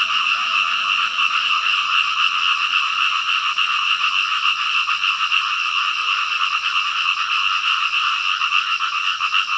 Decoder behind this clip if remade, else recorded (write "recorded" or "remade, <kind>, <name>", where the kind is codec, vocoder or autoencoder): recorded